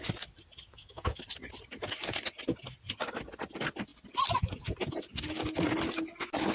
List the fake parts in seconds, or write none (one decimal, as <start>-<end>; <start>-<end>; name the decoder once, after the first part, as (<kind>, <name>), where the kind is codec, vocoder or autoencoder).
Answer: 0.7-1.2 (autoencoder, DAC-VAE)